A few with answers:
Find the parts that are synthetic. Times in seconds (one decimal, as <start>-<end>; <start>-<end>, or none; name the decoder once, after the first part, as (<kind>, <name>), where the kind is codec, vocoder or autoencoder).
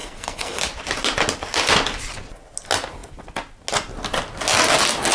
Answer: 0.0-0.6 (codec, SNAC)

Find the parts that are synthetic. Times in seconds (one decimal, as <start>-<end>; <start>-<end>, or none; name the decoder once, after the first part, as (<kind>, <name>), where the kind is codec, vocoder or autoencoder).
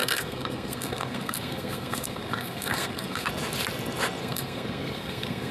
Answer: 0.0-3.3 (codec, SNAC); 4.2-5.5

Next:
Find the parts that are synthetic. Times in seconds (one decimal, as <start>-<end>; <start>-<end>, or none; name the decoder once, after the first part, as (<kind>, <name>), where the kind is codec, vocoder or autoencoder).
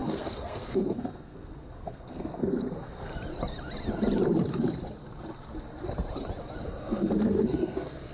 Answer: 0.0-3.1 (codec, SNAC); 6.6-8.1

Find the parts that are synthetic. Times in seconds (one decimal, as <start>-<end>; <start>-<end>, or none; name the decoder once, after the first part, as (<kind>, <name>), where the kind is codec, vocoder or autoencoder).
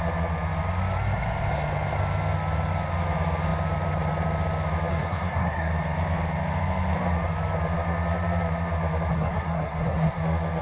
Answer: 4.9-5.7 (codec, SNAC); 9.1-10.2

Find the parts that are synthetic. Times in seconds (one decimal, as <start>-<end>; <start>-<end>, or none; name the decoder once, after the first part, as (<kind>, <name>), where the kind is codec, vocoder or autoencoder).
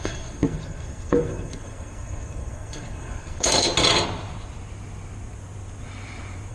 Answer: 0.0-3.7 (codec, SNAC)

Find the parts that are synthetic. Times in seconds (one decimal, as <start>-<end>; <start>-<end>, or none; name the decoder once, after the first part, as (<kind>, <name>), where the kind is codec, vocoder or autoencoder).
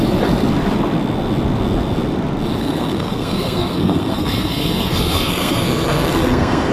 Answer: 2.6-6.7 (codec, SNAC)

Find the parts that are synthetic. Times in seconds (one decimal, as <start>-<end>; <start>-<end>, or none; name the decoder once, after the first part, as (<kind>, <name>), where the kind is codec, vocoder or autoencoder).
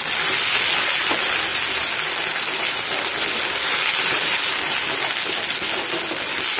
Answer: none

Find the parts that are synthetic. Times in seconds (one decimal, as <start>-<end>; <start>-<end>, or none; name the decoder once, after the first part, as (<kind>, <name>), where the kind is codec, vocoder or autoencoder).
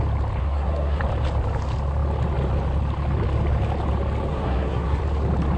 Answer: 0.4-1.0 (codec, SNAC); 4.3-5.0